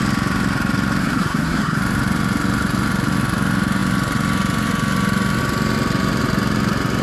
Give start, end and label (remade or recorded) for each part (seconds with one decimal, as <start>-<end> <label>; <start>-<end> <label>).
0.0-1.0 recorded; 1.0-1.8 remade; 1.8-7.0 recorded